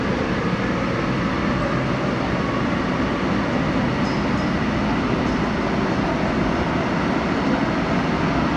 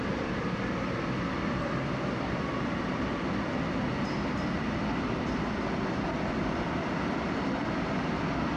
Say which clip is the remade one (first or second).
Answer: second